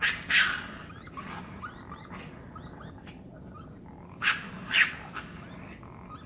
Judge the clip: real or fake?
real